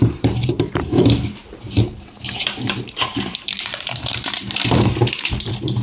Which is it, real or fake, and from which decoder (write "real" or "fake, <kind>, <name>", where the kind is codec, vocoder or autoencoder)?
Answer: fake, vocoder, BigVGAN v2